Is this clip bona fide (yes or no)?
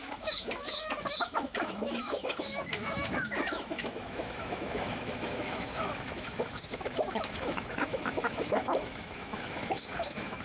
no